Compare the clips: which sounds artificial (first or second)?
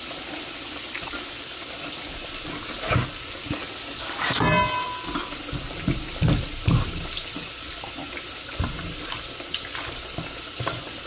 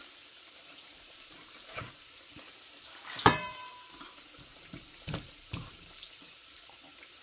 second